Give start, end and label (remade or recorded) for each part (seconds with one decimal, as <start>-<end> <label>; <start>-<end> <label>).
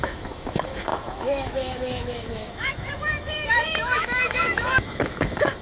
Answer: 0.0-5.6 remade